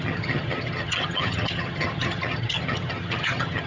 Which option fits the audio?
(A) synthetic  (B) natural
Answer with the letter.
A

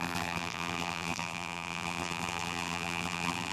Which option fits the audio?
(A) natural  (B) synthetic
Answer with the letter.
B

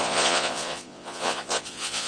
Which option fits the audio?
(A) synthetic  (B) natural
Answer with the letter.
A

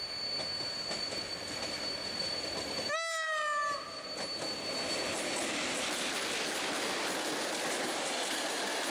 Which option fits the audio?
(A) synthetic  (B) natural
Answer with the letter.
B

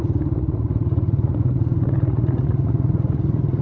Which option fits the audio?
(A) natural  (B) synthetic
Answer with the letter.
B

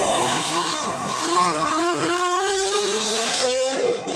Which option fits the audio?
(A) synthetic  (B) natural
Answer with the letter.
A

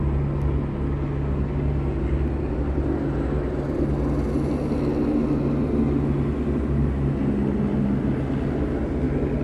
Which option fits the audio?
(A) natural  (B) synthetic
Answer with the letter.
A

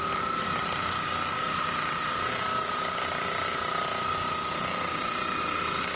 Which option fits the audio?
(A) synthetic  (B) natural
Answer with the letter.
B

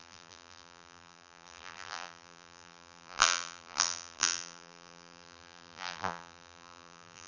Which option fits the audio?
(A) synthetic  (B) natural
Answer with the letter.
A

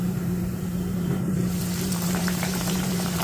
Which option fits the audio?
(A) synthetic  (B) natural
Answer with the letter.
A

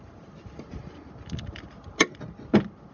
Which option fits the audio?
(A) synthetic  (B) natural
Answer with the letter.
B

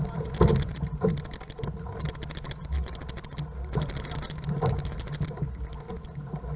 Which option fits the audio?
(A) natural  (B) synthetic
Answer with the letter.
A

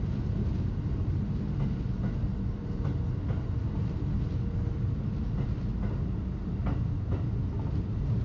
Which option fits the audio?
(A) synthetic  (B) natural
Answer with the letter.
B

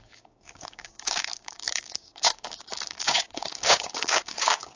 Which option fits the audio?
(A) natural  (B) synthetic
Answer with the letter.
B